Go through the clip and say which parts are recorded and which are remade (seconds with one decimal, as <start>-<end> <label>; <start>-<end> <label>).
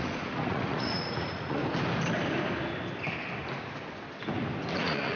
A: 0.0-1.6 remade; 1.6-4.7 recorded; 4.7-5.2 remade